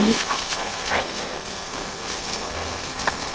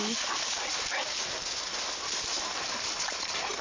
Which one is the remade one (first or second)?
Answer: first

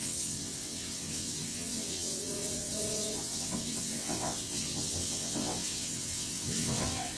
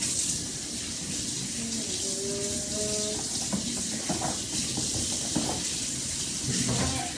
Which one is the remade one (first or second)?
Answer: first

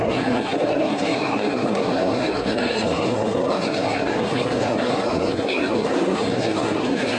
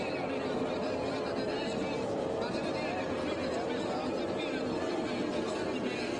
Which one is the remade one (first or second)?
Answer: first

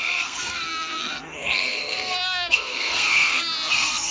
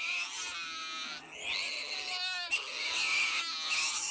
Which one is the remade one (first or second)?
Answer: first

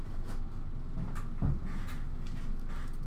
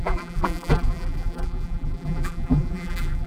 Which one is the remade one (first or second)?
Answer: second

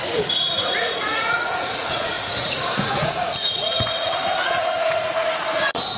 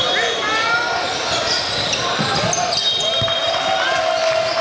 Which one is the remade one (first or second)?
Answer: first